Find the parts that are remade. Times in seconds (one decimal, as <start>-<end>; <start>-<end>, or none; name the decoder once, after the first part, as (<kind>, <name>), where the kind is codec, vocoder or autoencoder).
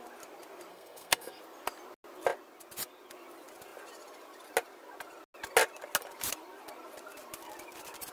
0.7-1.4 (codec, SNAC)